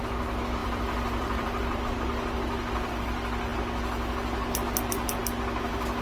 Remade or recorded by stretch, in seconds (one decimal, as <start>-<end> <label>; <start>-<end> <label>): 0.0-0.6 recorded; 0.6-1.8 remade; 1.8-6.0 recorded